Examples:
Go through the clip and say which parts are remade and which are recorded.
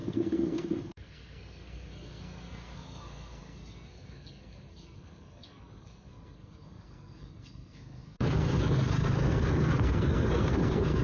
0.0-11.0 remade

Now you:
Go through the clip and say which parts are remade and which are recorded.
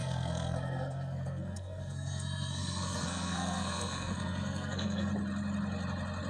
0.0-5.1 remade; 5.1-6.3 recorded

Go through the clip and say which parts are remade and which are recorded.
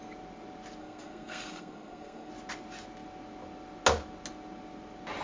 0.0-0.8 recorded; 0.8-2.3 remade; 2.3-5.2 recorded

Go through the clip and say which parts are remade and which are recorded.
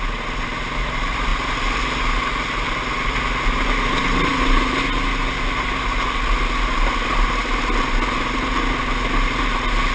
0.0-9.9 recorded